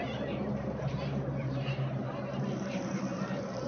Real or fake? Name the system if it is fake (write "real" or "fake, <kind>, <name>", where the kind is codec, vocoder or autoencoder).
fake, vocoder, BigVGAN v2